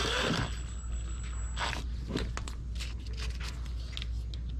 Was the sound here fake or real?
real